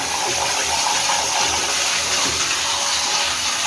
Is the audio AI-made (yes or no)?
no